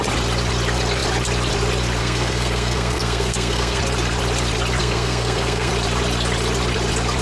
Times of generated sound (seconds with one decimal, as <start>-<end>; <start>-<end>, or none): 2.0-3.8; 4.8-5.7